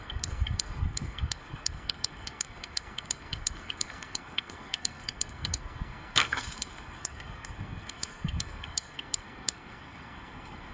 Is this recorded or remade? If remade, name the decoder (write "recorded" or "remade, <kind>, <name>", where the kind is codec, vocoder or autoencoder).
remade, codec, SNAC